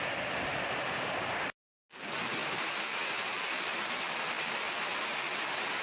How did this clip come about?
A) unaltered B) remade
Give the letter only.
B